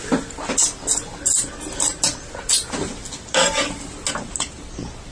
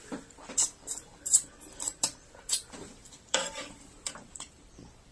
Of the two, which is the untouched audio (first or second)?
first